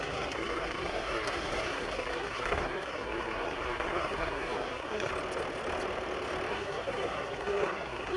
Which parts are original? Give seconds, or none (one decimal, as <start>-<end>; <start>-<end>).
5.1-6.5